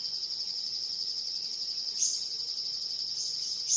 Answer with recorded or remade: recorded